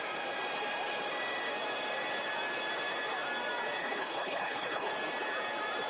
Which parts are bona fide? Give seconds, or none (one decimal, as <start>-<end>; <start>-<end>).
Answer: 0.0-3.8; 4.9-5.9